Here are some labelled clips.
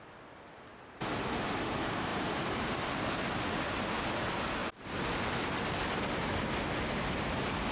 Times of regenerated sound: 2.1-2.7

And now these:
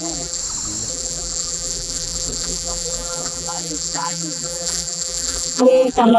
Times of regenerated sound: 0.0-0.4; 0.9-6.2

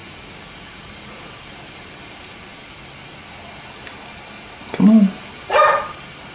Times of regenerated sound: 0.8-2.5; 5.4-6.3

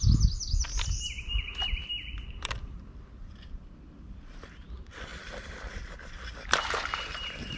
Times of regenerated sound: 1.8-4.5; 5.1-5.6

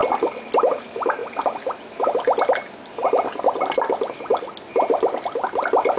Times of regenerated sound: 0.5-1.2; 3.4-4.3; 4.9-6.0

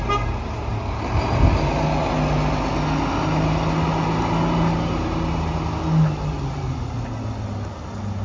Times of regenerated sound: 0.7-1.4

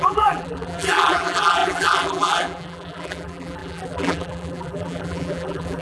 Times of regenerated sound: 0.0-5.8

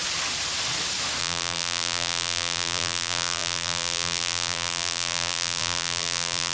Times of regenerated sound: 1.2-6.5